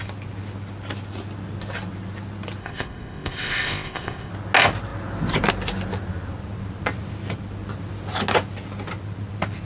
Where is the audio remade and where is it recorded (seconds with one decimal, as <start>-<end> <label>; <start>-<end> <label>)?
0.0-2.6 recorded; 2.6-4.3 remade; 4.3-9.6 recorded